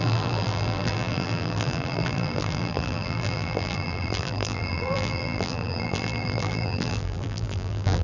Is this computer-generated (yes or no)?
yes